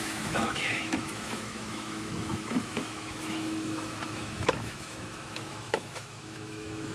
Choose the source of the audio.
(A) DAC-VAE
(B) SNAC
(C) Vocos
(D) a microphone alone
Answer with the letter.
A